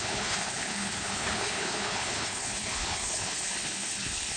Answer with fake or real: fake